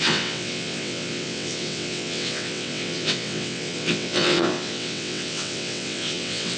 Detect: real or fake fake